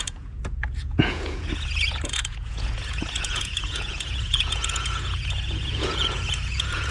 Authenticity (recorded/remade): remade